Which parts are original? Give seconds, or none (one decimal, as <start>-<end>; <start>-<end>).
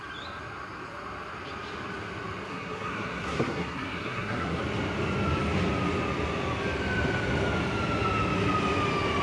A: 0.0-2.5; 4.6-9.2